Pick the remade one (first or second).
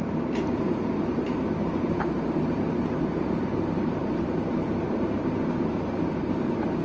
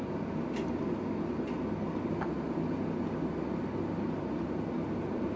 first